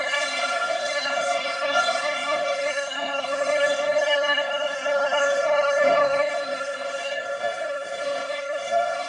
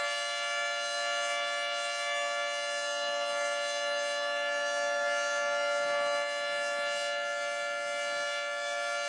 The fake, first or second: first